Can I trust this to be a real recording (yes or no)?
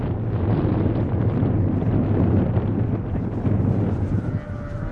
yes